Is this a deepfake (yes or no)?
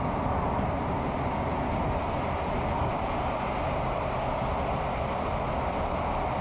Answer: no